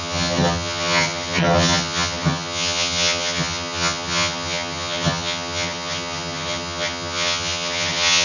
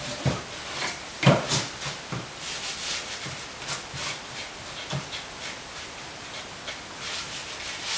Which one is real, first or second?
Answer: second